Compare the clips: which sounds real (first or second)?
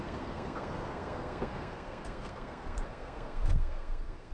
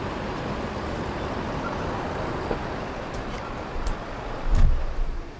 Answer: second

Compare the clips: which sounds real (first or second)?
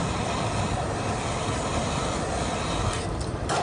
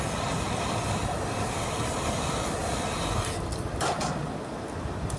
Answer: first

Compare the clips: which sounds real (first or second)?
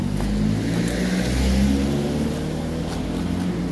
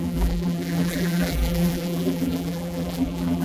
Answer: first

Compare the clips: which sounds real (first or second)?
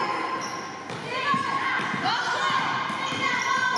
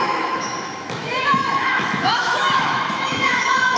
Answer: first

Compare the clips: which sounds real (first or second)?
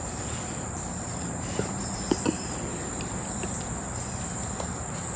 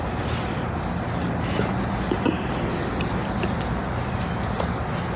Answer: second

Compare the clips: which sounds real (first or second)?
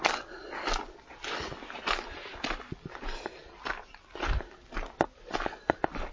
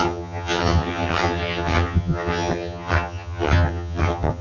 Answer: first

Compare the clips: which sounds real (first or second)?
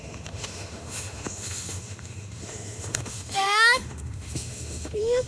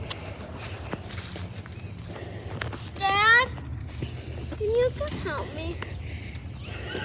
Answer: second